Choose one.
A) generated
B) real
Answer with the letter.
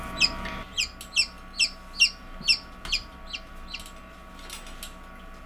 B